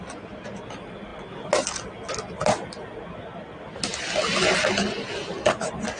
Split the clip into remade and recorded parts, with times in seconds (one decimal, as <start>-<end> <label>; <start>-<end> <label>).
0.0-6.0 recorded